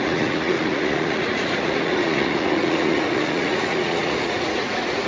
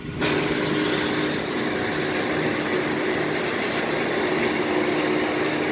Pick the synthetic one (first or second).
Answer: first